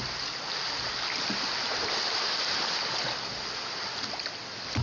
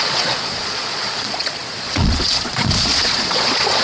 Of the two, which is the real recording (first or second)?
first